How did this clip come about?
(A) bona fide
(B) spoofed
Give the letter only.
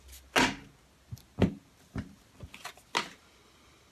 A